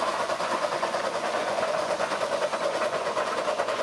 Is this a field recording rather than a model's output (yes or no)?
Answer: no